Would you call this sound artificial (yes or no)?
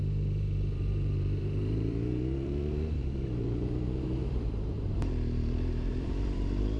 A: yes